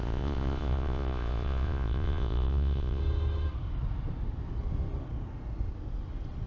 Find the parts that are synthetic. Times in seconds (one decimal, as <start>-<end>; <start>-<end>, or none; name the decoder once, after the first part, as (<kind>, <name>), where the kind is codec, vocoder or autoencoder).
0.0-3.0 (vocoder, Vocos)